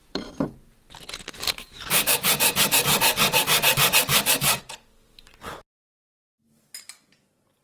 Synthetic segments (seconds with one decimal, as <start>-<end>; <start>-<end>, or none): 0.0-4.6